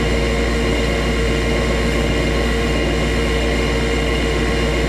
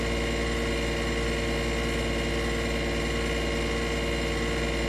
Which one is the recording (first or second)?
second